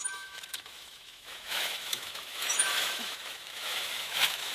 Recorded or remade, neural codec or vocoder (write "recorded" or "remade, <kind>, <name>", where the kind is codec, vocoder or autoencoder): remade, autoencoder, DAC-VAE